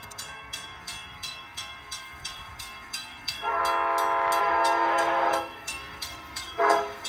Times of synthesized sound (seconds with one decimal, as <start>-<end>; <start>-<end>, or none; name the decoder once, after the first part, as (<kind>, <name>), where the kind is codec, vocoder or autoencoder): 0.0-3.6 (codec, SNAC); 4.4-7.1